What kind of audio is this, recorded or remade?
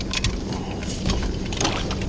recorded